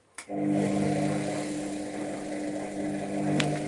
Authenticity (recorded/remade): recorded